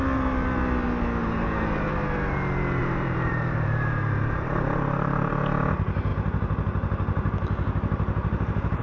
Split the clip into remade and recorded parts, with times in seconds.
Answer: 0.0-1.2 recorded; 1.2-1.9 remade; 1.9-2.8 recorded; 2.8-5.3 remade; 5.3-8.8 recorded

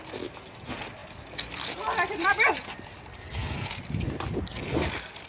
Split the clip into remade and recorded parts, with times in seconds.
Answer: 0.0-1.0 recorded; 1.0-2.5 remade; 2.5-5.3 recorded

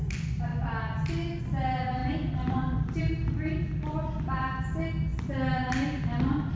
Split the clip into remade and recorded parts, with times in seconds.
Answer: 0.0-6.6 recorded